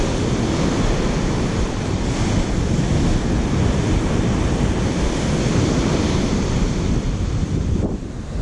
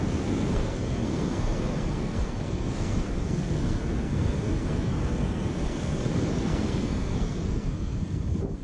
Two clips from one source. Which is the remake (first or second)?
second